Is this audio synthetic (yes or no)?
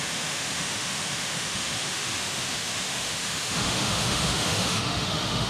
yes